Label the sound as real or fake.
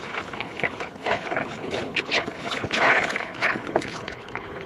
fake